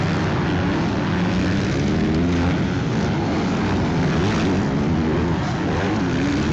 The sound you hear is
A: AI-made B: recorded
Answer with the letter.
B